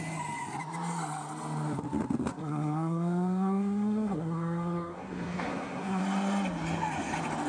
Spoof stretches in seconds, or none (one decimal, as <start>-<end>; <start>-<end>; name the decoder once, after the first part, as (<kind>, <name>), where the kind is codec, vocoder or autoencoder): 2.3-6.0 (codec, SNAC)